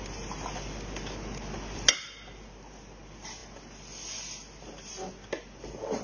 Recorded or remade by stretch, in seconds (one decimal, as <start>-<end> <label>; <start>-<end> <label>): 0.0-6.0 recorded